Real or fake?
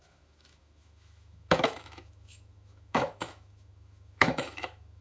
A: fake